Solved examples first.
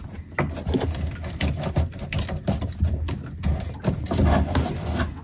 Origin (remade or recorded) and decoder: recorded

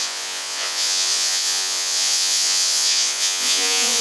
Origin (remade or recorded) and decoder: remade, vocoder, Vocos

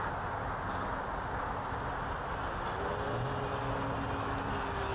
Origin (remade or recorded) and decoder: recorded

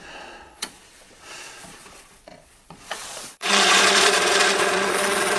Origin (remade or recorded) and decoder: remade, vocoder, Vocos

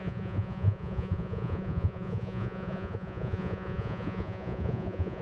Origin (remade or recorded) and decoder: remade, vocoder, Vocos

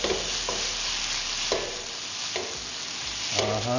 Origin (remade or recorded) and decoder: recorded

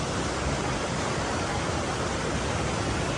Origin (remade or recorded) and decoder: recorded